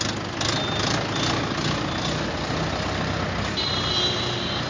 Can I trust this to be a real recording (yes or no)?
yes